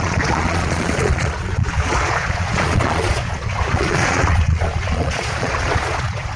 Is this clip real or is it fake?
fake